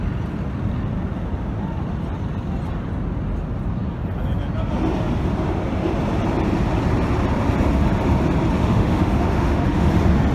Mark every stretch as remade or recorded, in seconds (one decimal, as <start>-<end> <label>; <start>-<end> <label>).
0.0-8.6 recorded; 8.6-9.9 remade; 9.9-10.3 recorded

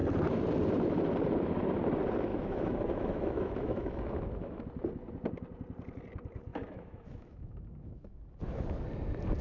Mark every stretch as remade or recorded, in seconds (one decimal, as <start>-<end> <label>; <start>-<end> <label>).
0.0-2.3 recorded; 2.3-4.6 remade; 4.6-6.5 recorded; 6.5-8.2 remade; 8.2-9.4 recorded

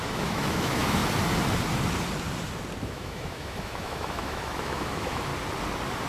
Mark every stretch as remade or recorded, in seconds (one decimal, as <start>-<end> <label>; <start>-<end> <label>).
0.0-1.0 remade; 1.0-2.8 recorded; 2.8-5.3 remade; 5.3-6.1 recorded

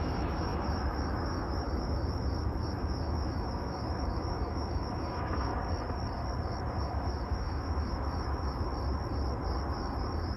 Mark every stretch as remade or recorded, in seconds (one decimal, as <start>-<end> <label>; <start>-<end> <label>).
0.0-5.5 remade; 5.5-6.8 recorded; 6.8-8.7 remade; 8.7-10.4 recorded